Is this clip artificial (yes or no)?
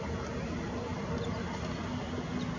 no